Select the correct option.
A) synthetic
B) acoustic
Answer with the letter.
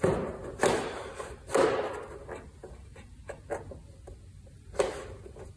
B